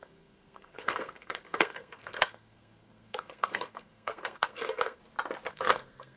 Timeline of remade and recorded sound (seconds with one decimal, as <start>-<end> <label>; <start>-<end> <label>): 0.0-5.0 remade; 5.0-5.5 recorded; 5.5-6.2 remade